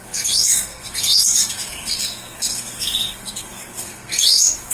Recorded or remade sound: remade